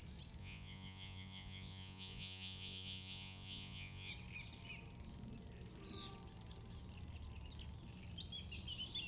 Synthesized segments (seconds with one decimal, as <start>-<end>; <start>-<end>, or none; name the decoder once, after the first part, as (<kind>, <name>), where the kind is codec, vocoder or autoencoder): 0.4-4.1 (vocoder, Vocos)